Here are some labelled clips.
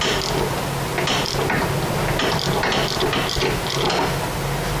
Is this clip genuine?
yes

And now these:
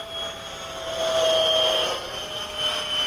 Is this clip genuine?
yes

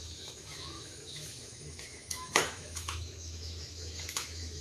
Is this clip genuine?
no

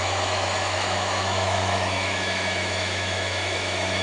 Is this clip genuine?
no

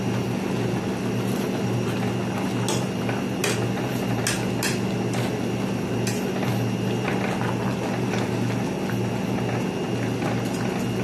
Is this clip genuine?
yes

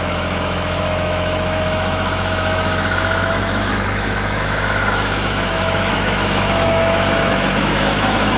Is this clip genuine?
no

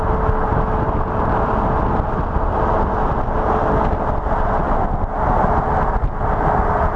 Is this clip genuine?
yes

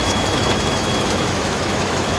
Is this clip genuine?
no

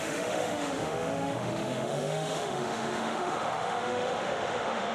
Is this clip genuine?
no